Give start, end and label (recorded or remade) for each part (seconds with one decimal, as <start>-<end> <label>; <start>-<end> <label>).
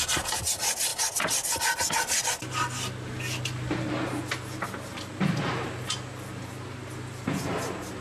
0.0-8.0 recorded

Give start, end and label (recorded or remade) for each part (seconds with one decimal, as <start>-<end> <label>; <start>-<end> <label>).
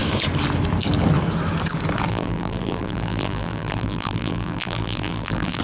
0.0-2.1 recorded; 2.1-5.6 remade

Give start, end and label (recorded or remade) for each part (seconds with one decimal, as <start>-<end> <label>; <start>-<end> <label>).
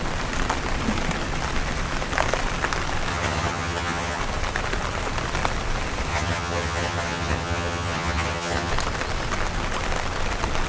0.0-3.1 recorded; 3.1-4.2 remade; 4.2-6.1 recorded; 6.1-8.7 remade; 8.7-10.7 recorded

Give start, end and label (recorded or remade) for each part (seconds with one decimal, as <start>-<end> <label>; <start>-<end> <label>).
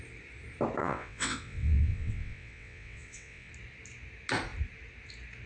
0.0-0.8 recorded; 0.8-3.5 remade; 3.5-5.5 recorded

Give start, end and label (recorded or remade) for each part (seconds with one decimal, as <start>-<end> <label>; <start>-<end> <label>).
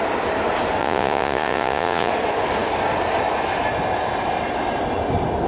0.0-0.8 recorded; 0.8-2.1 remade; 2.1-5.5 recorded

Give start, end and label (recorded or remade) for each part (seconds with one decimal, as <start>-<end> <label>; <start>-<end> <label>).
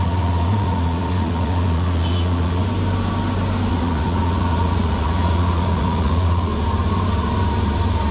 0.0-2.6 remade; 2.6-3.7 recorded; 3.7-6.5 remade; 6.5-8.1 recorded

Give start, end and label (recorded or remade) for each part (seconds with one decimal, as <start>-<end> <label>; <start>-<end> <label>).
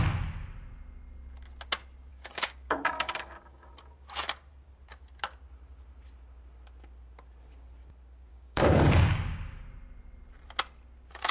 0.0-2.1 recorded; 2.1-3.7 remade; 3.7-8.3 recorded; 8.3-9.6 remade; 9.6-11.3 recorded